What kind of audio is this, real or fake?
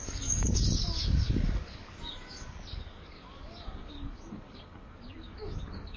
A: fake